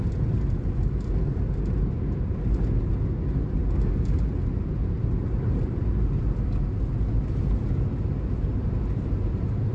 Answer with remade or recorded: recorded